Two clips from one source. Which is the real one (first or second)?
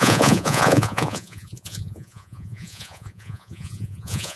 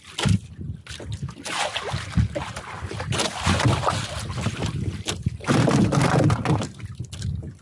second